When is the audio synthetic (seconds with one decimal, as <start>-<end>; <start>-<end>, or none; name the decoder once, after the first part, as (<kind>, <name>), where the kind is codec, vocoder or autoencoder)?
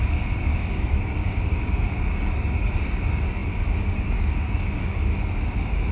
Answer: 0.0-5.9 (codec, DAC)